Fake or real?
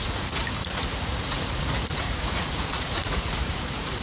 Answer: fake